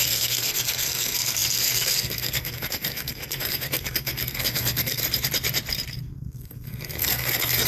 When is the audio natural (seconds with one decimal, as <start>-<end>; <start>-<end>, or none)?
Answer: 5.0-6.0